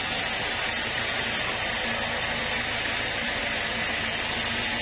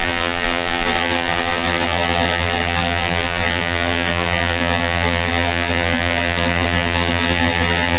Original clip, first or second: first